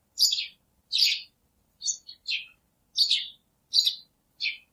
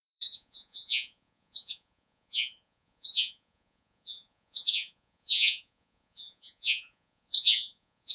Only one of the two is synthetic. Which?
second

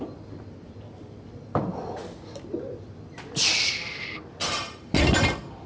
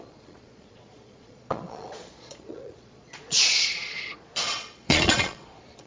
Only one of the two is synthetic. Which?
second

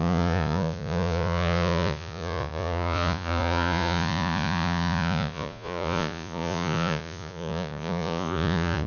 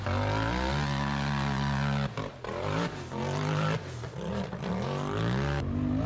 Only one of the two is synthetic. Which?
first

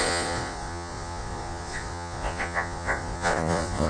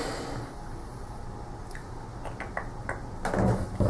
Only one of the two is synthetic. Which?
first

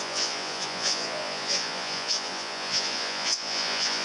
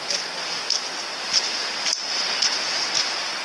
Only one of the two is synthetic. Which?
first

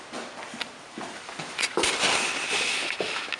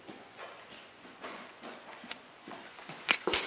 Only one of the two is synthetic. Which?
second